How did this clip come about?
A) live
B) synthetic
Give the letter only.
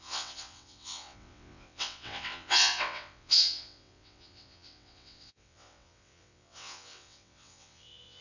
B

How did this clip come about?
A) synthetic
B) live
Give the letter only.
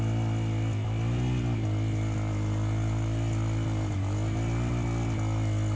B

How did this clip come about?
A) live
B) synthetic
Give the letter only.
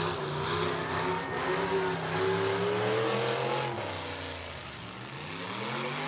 A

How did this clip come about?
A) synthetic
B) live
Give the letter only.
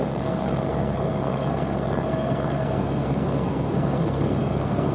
A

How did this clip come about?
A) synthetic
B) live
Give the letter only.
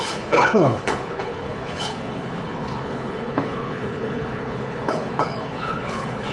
A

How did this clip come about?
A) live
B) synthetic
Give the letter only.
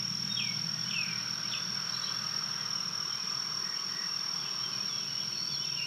A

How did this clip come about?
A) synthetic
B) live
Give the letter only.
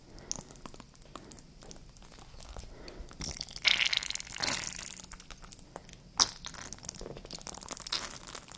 B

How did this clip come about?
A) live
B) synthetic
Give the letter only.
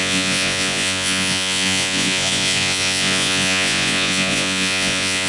B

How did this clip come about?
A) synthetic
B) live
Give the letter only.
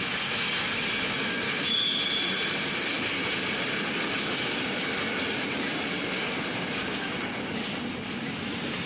B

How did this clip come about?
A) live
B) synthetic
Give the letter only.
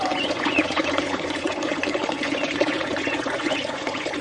B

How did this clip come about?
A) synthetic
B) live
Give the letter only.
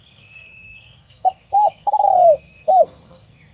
A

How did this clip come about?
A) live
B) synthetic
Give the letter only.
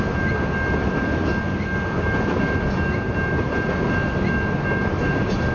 A